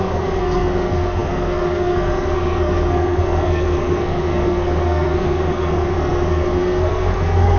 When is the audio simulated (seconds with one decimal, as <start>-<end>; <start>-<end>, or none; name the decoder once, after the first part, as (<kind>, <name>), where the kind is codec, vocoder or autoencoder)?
0.0-7.6 (codec, SNAC)